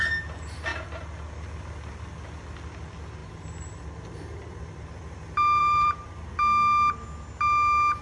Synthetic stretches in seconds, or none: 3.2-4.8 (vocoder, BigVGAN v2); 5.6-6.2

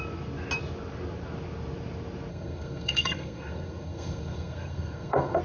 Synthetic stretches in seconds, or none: 2.3-5.4 (codec, SNAC)

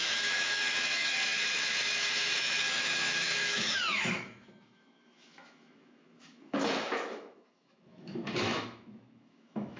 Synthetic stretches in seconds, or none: 0.0-9.8 (autoencoder, DAC-VAE)

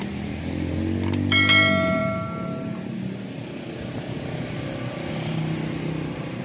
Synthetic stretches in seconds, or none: none

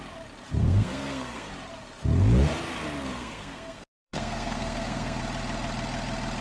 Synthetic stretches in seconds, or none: 0.6-1.5 (codec, SNAC); 3.2-5.2

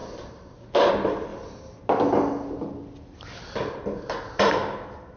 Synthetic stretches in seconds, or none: none

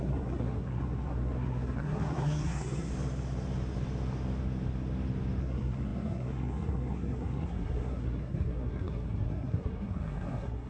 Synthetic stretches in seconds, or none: 0.0-2.9 (codec, SNAC); 5.4-10.7

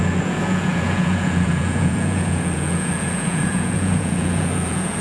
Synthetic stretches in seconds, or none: 0.0-5.0 (vocoder, Vocos)